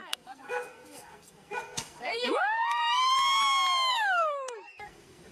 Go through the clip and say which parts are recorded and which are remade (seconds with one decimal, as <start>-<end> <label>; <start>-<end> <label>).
0.0-3.1 remade; 3.1-3.9 recorded; 3.9-5.3 remade